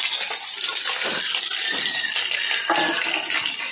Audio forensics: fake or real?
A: real